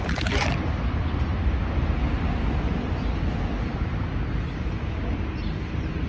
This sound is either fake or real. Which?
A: real